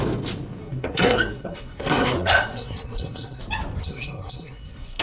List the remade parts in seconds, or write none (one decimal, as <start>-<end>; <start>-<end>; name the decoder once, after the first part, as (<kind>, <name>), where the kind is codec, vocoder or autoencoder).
0.6-3.4 (codec, SNAC); 3.8-5.0